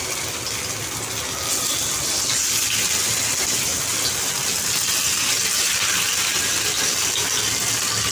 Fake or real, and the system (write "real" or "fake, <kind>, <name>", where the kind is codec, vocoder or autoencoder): real